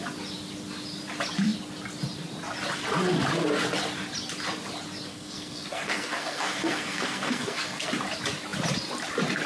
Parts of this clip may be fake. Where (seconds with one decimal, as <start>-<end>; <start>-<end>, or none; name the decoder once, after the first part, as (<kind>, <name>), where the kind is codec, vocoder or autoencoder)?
5.1-7.9 (codec, SNAC)